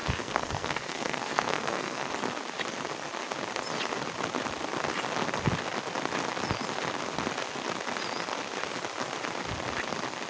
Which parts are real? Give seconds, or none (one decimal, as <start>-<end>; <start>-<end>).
2.1-10.3